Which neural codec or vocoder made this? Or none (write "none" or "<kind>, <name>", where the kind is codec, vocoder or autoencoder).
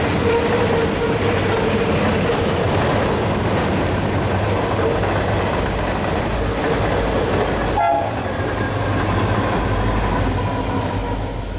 none